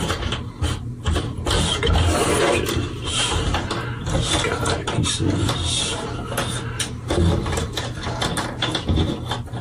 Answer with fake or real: real